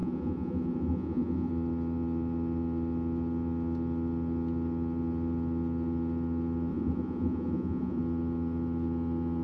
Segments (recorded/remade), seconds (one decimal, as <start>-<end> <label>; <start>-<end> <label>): 0.0-1.5 remade; 1.5-6.7 recorded; 6.7-8.0 remade; 8.0-9.4 recorded